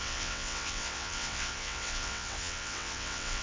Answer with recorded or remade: remade